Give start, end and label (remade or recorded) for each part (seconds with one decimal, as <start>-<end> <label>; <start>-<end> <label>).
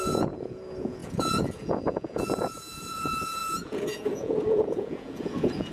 0.0-5.7 remade